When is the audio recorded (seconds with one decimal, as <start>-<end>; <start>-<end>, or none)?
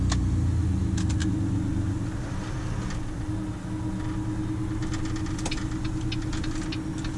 0.0-7.2